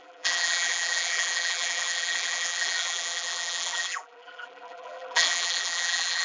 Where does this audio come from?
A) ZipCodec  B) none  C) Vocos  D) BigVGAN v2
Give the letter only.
D